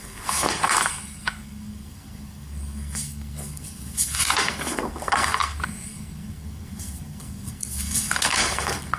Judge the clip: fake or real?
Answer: fake